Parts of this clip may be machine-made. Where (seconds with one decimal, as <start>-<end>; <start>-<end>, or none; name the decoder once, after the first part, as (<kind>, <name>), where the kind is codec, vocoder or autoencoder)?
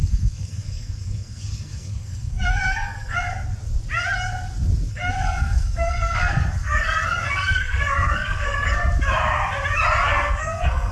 0.0-3.3 (codec, SNAC); 4.9-8.8; 10.1-10.9